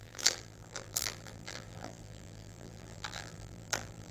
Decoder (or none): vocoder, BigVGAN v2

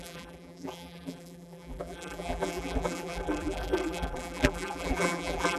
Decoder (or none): vocoder, BigVGAN v2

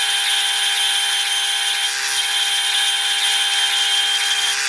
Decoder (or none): none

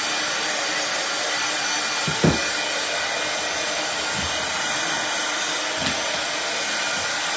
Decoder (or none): none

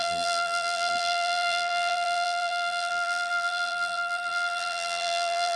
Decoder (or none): vocoder, BigVGAN v2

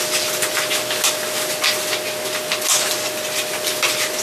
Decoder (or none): none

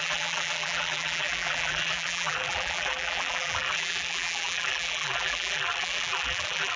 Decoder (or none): vocoder, BigVGAN v2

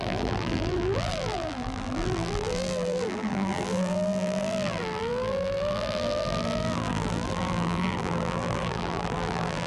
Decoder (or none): vocoder, BigVGAN v2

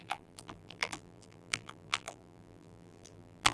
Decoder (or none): vocoder, BigVGAN v2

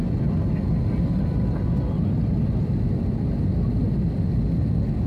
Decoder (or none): none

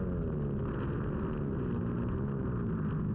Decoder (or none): none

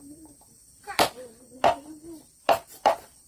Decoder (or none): vocoder, BigVGAN v2